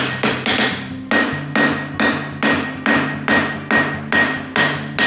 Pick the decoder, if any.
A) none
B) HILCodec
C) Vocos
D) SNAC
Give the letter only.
A